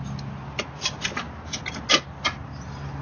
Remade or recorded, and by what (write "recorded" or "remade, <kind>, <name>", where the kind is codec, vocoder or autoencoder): recorded